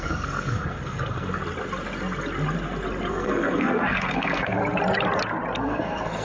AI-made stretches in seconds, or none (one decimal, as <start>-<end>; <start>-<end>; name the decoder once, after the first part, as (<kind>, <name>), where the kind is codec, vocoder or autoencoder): 0.0-1.4 (codec, SNAC); 3.1-4.6; 5.6-6.2